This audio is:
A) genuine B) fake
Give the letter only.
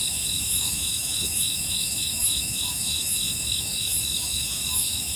B